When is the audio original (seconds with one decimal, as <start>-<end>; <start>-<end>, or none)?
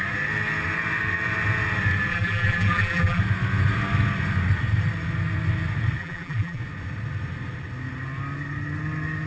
0.0-2.1; 3.2-6.0; 6.6-9.3